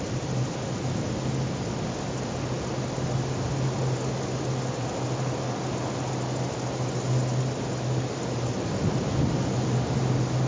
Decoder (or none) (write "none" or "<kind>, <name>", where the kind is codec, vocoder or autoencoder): none